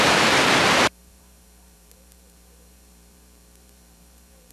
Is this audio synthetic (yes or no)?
yes